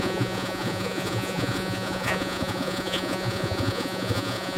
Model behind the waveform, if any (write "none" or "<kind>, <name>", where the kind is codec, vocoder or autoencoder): vocoder, Vocos